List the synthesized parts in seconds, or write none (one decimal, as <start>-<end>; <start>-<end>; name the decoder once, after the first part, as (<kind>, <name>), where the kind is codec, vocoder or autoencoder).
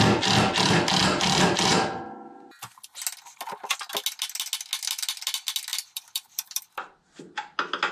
5.7-6.6 (vocoder, BigVGAN v2)